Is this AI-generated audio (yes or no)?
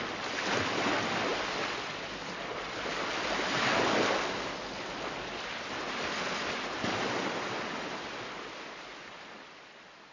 no